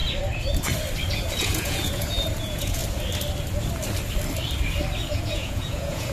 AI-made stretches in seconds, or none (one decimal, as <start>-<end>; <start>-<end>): 1.4-2.8; 5.1-6.1